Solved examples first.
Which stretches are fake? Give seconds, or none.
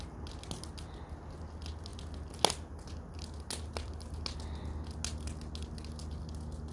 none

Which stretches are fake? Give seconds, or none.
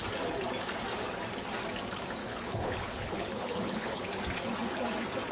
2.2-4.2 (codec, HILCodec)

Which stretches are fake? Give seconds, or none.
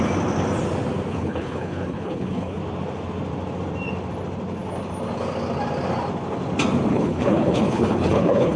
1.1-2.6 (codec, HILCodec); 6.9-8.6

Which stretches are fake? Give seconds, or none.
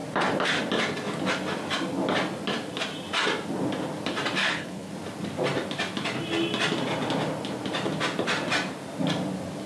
4.4-4.9 (codec, HILCodec)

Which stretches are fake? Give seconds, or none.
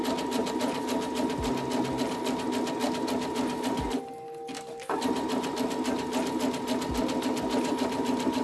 none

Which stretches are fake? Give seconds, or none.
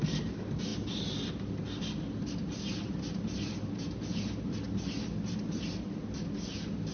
none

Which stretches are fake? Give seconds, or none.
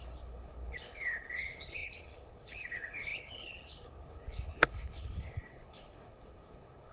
0.0-6.9 (codec, HILCodec)